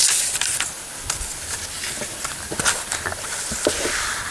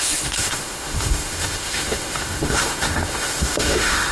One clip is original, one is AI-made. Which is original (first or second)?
first